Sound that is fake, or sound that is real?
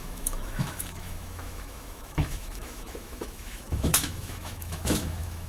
fake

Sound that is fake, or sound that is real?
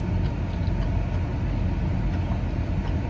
real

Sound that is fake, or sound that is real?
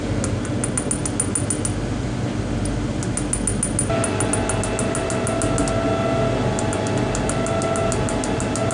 real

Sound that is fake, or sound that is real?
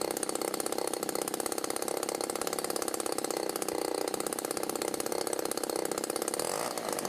real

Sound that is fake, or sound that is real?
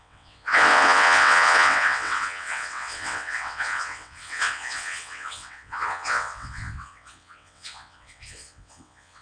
fake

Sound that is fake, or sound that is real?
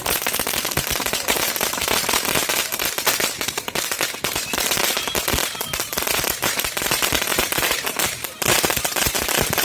fake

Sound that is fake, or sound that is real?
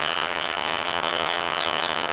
fake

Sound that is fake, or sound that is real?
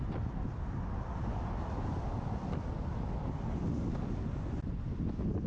real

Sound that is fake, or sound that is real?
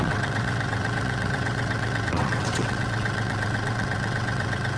fake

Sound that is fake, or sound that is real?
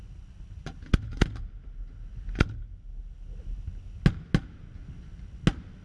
real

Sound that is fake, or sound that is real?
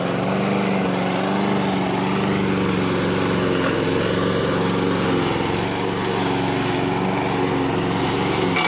real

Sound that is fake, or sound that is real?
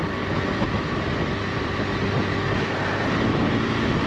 real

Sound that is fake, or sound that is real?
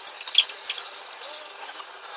real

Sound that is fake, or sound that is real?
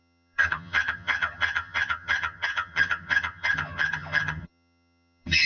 fake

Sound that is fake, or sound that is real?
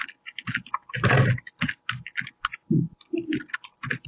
real